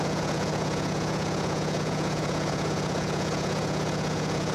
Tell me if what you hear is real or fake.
fake